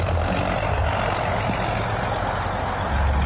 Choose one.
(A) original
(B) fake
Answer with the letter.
A